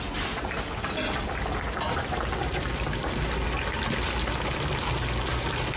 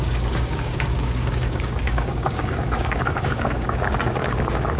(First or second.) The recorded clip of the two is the first